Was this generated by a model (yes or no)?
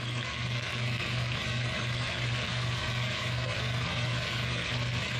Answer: yes